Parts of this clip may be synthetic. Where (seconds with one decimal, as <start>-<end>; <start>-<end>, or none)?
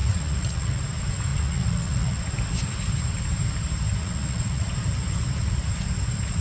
0.0-0.8; 1.3-2.2; 4.0-4.7